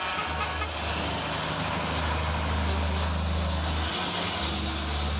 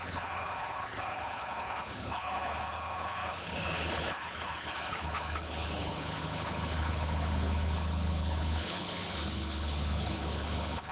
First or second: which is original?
first